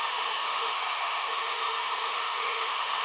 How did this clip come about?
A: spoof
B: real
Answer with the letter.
A